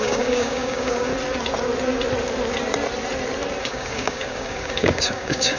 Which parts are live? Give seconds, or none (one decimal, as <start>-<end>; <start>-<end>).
1.1-3.6

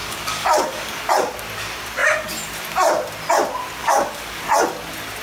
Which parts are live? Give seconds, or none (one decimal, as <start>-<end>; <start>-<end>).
1.1-3.8; 4.4-5.2

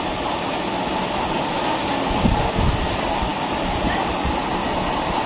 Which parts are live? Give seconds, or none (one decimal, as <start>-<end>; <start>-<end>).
0.0-5.3

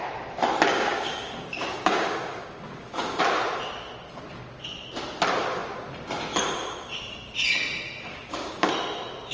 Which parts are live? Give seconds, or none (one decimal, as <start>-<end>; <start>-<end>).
0.0-0.7; 3.2-8.1; 8.7-9.3

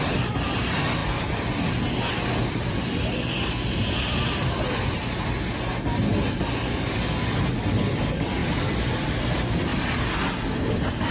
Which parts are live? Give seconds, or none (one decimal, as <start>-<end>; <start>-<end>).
0.0-11.1